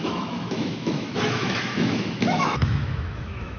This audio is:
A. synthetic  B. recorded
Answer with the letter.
A